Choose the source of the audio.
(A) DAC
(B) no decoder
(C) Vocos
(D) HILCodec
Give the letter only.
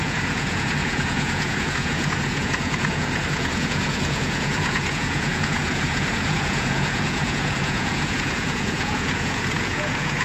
C